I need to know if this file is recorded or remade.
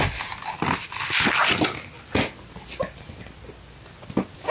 recorded